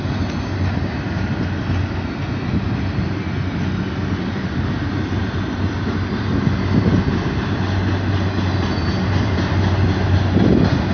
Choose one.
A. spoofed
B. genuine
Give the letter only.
B